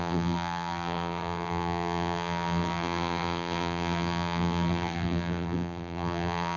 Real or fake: fake